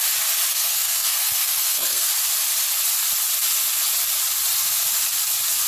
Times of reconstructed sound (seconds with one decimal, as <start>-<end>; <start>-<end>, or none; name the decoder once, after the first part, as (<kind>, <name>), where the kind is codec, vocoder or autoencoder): 0.5-2.1 (codec, SNAC)